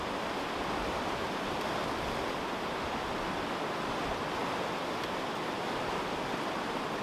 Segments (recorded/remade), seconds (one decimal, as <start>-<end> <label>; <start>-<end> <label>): 0.0-1.8 remade; 1.8-3.3 recorded; 3.3-4.4 remade; 4.4-5.3 recorded; 5.3-7.0 remade